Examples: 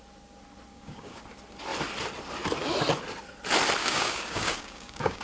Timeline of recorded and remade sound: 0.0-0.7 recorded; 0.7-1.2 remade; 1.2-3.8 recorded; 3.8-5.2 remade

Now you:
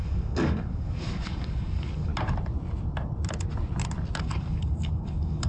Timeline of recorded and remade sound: 0.0-2.1 remade; 2.1-4.2 recorded; 4.2-5.5 remade

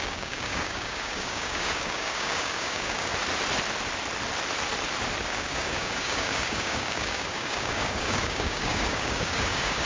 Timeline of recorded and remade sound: 0.0-3.1 remade; 3.1-5.2 recorded; 5.2-9.9 remade